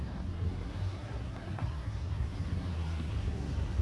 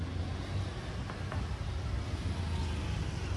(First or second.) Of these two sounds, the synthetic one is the first